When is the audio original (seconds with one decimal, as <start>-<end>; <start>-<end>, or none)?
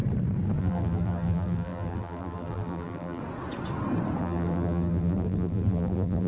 0.0-0.6; 3.2-4.2